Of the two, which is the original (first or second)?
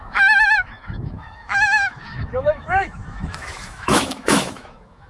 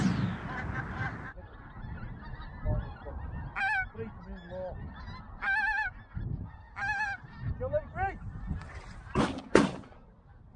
second